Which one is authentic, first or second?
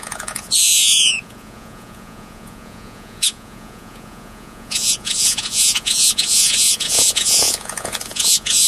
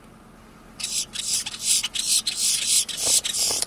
second